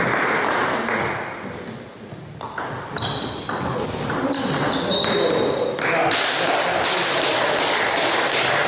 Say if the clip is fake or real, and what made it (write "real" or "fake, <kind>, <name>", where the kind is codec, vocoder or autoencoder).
real